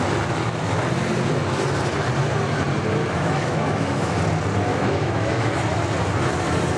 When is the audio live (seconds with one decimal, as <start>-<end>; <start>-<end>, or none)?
0.0-3.0; 4.2-4.7; 5.6-6.8